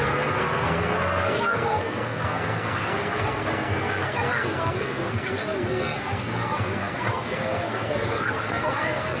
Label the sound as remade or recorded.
remade